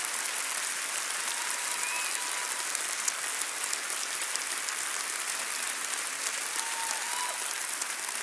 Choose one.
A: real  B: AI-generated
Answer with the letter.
A